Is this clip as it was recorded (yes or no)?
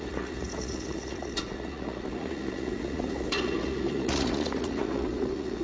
no